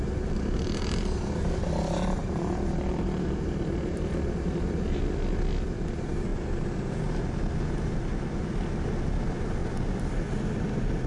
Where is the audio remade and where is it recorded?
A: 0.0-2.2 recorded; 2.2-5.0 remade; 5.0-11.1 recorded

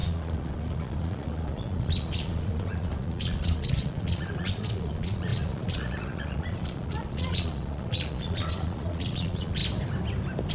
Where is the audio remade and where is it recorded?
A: 0.0-9.6 remade; 9.6-10.5 recorded

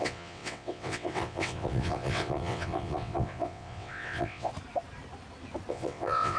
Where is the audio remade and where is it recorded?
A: 0.0-4.5 remade; 4.5-5.7 recorded; 5.7-6.4 remade

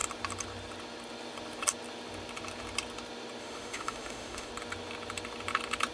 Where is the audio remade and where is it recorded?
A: 0.0-3.4 recorded; 3.4-4.5 remade; 4.5-5.9 recorded